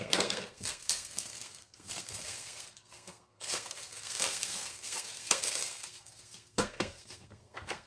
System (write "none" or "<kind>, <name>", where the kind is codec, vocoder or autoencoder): codec, SNAC